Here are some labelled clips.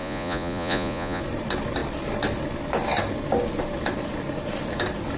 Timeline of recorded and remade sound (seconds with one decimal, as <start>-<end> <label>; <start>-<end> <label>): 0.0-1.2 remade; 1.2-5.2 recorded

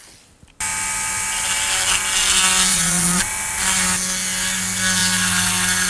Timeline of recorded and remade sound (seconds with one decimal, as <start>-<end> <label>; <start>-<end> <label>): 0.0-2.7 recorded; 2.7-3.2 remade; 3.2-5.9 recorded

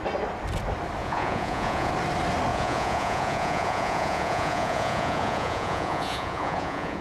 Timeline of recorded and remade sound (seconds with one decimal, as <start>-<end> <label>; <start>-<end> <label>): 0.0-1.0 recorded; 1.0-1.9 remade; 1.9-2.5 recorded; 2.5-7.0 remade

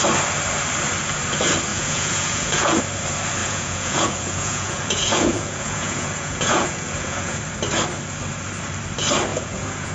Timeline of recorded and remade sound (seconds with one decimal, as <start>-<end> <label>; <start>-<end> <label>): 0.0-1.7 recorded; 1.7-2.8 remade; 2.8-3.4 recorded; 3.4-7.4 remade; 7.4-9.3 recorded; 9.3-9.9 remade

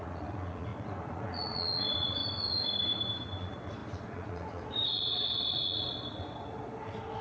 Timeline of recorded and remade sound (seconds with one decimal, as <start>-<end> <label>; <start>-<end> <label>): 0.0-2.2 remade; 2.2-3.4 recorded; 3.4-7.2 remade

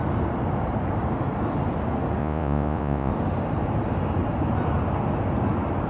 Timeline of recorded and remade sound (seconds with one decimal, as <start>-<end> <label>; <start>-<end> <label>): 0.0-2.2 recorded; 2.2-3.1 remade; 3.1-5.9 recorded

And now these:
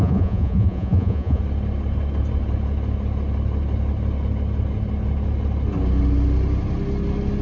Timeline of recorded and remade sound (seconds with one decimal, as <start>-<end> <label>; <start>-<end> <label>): 0.0-1.4 remade; 1.4-7.4 recorded

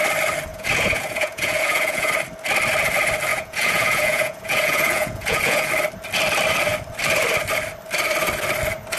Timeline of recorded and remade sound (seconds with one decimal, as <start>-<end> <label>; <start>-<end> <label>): 0.0-0.5 recorded; 0.5-2.1 remade; 2.1-3.3 recorded; 3.3-5.7 remade; 5.7-9.0 recorded